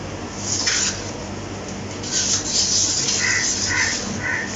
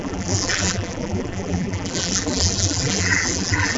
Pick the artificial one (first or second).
second